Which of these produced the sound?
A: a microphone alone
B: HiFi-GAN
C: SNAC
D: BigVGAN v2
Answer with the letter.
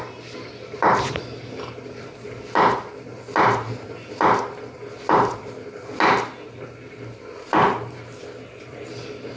A